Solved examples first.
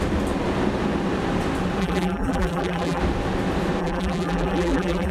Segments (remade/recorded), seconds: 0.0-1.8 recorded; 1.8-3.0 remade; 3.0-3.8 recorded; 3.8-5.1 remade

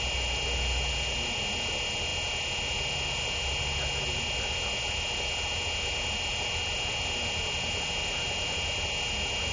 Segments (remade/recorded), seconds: 0.0-9.5 recorded